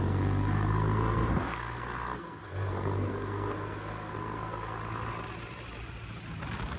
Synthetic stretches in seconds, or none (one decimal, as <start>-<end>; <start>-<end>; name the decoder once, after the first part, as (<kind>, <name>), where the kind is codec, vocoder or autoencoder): 0.0-4.8 (codec, SNAC)